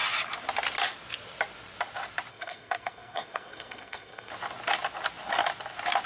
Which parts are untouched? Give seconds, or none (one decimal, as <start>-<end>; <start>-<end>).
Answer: 0.0-2.3; 4.3-6.1